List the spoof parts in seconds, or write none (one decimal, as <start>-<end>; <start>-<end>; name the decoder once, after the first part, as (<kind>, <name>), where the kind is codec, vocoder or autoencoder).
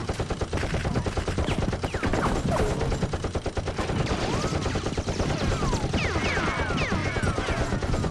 7.0-8.1 (vocoder, Vocos)